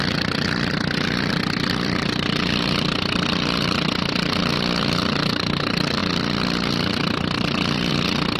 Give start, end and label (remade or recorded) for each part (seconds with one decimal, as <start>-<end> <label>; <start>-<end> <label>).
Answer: 0.0-8.4 recorded